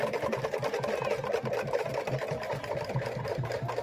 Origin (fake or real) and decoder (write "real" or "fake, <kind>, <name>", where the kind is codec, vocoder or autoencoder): real